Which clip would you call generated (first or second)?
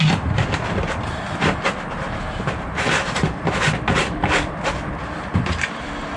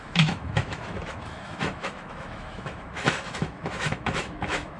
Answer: second